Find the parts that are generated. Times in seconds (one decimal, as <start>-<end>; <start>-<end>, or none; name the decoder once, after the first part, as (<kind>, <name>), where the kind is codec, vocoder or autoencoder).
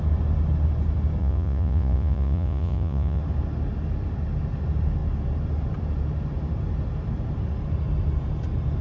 1.2-3.2 (vocoder, Vocos)